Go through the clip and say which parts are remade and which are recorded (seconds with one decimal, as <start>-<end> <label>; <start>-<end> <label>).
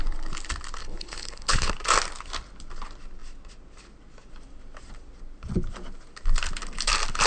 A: 0.0-0.8 recorded; 0.8-1.7 remade; 1.7-7.3 recorded